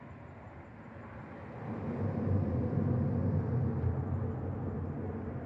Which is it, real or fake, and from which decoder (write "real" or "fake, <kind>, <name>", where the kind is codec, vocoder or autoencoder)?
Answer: real